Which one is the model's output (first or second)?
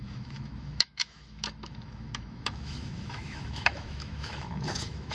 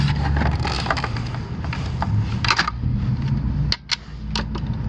first